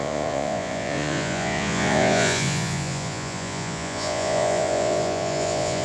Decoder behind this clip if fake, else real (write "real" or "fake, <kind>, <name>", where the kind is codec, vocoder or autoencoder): fake, vocoder, Vocos